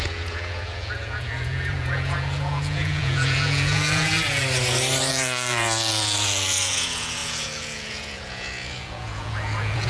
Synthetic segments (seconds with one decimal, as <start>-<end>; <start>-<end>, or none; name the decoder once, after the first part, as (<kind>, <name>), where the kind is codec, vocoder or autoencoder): 0.0-4.4 (vocoder, Vocos); 5.1-9.9